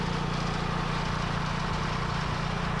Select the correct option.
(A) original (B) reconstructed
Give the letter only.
A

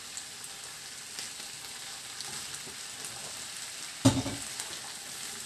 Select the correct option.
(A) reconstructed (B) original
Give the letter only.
B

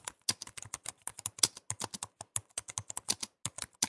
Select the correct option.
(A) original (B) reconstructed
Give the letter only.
A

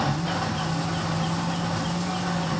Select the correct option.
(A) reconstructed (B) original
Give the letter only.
B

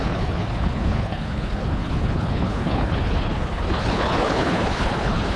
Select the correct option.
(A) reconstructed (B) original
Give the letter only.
A